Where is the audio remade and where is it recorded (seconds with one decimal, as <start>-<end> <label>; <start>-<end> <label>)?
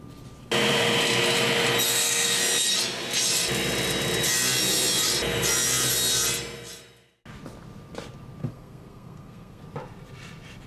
0.0-1.9 recorded; 1.9-2.4 remade; 2.4-8.4 recorded; 8.4-9.6 remade; 9.6-10.7 recorded